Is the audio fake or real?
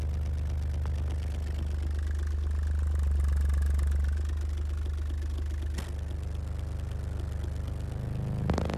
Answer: real